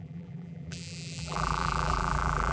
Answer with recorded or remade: remade